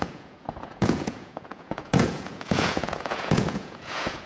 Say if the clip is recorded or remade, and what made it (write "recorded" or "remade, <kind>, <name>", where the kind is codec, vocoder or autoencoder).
remade, vocoder, Vocos